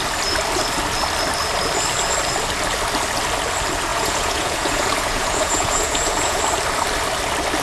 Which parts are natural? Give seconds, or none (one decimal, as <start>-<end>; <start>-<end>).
0.0-3.9; 6.4-7.6